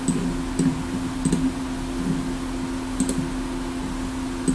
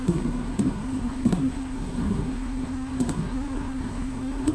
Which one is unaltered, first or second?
first